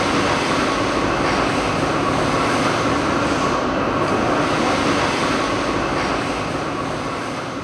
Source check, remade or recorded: recorded